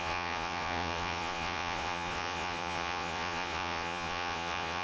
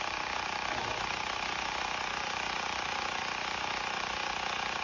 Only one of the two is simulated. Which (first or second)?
first